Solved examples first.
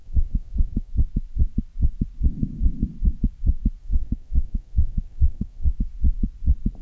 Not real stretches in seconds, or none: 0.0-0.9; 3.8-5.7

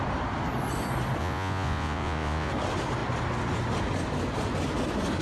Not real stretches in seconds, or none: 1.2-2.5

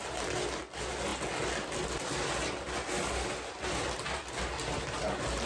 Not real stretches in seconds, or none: none

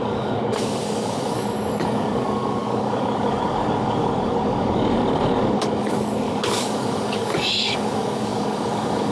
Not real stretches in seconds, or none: 0.0-9.1